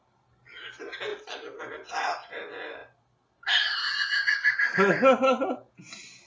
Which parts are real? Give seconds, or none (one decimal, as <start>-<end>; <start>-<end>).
0.0-6.3

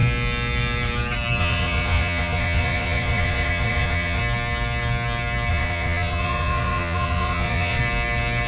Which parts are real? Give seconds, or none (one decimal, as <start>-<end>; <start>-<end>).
0.0-1.4; 4.2-5.5; 7.8-8.5

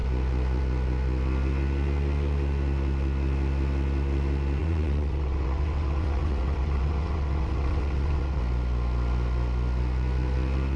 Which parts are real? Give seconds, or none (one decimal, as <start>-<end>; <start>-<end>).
0.0-4.6; 8.4-10.8

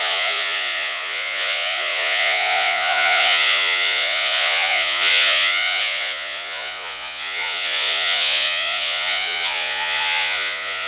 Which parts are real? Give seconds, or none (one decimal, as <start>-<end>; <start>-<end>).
none

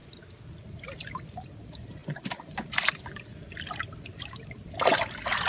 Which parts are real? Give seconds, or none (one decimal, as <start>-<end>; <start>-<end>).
0.0-5.5

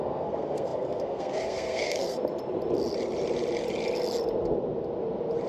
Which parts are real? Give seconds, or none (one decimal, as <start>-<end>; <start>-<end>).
2.2-5.5

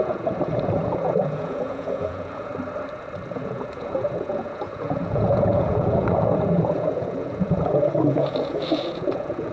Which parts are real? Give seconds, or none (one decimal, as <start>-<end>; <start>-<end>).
2.5-3.3